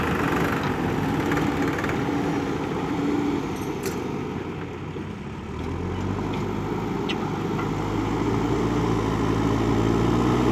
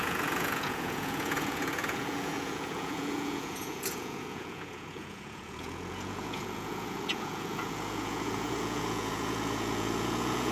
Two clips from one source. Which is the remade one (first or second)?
second